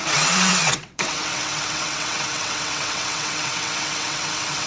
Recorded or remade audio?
remade